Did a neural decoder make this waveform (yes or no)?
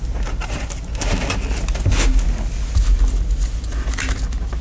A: no